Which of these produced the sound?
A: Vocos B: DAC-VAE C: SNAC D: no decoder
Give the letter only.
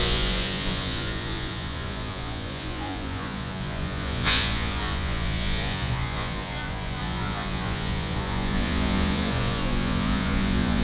A